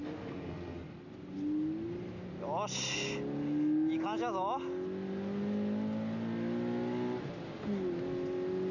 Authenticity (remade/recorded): recorded